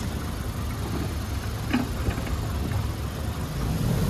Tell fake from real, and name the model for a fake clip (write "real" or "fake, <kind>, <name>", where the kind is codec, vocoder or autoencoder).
real